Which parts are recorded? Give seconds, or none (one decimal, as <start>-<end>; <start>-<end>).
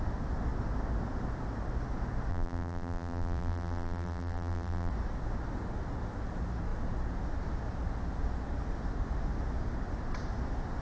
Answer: 0.0-2.3; 4.9-10.8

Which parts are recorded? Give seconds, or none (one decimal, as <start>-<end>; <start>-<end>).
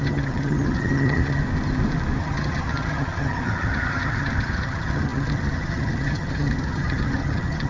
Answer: 1.4-2.2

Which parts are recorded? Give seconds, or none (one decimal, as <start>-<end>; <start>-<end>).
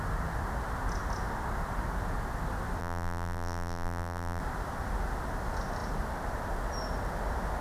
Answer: 0.0-2.8; 4.4-7.6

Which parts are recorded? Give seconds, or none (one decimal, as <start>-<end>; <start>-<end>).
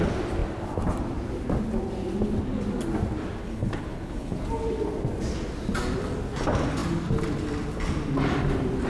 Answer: 0.0-3.4; 4.4-8.9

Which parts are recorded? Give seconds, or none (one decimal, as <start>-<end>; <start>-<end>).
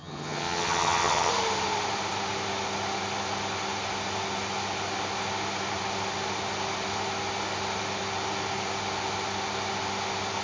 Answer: 1.3-10.4